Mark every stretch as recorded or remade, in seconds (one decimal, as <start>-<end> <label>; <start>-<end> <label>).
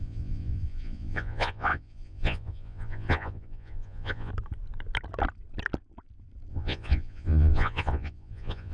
0.0-4.3 remade; 4.3-6.5 recorded; 6.5-8.7 remade